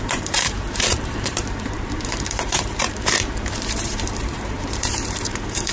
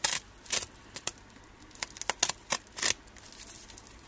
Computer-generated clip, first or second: first